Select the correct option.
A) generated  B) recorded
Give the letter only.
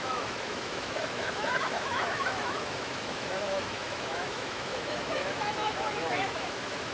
A